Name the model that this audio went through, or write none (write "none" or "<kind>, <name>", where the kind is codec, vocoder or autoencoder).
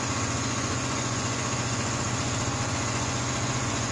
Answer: vocoder, Vocos